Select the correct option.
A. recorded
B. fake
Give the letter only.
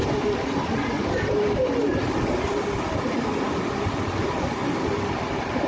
B